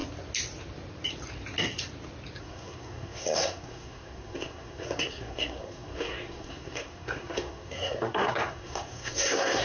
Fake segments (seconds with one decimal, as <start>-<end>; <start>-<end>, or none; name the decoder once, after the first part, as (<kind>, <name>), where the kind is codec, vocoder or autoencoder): 2.4-9.6 (codec, SNAC)

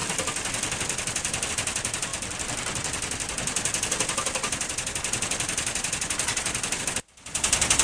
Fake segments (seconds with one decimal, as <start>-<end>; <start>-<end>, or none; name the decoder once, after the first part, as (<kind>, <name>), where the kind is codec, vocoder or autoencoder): none